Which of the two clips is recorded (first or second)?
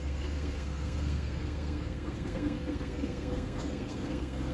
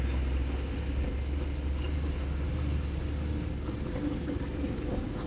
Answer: second